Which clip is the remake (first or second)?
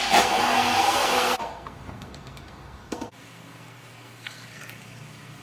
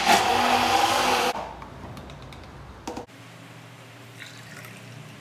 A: first